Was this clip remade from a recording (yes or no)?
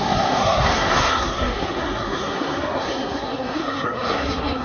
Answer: yes